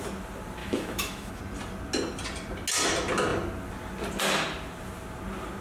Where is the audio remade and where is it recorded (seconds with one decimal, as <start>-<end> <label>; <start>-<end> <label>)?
0.0-0.6 recorded; 0.6-1.4 remade; 1.4-5.6 recorded